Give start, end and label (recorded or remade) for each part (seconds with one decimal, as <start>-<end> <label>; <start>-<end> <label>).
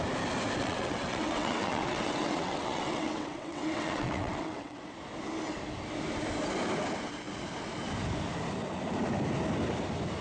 0.0-0.6 recorded; 0.6-4.8 remade; 4.8-10.2 recorded